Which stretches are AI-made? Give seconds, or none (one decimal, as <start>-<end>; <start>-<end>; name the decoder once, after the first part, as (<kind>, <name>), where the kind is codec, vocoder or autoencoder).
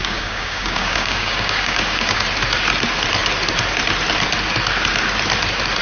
0.0-2.2 (codec, DAC)